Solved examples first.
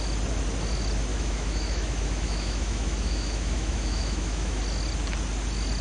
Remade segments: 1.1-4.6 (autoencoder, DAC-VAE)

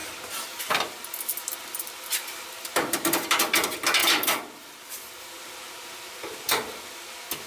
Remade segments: none

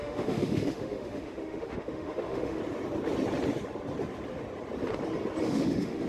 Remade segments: 0.0-2.6 (autoencoder, DAC-VAE); 5.4-6.1

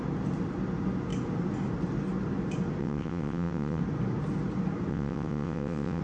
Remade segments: 2.8-3.8 (vocoder, WaveNeXt); 4.9-6.0

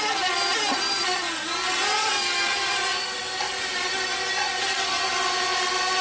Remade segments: none

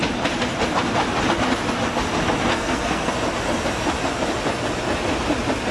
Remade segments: 2.5-3.1 (codec, SNAC)

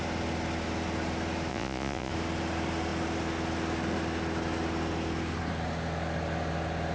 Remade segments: 1.5-2.1 (vocoder, Vocos)